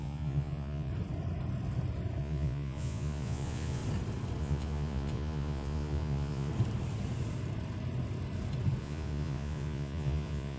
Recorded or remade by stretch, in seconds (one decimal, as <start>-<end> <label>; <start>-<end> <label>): 0.0-0.9 remade; 0.9-2.2 recorded; 2.2-3.8 remade; 3.8-4.4 recorded; 4.4-6.5 remade; 6.5-8.8 recorded; 8.8-10.6 remade